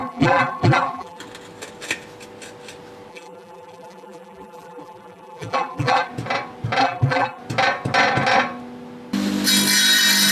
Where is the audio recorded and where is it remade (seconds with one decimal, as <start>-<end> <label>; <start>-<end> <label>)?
0.0-1.2 remade; 1.2-3.1 recorded; 3.1-6.1 remade; 6.1-6.8 recorded; 6.8-7.4 remade; 7.4-10.3 recorded